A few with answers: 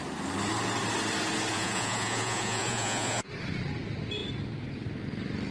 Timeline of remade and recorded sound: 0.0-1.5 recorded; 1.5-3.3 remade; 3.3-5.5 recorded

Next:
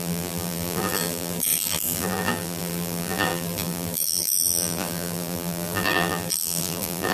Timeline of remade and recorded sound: 0.0-7.1 remade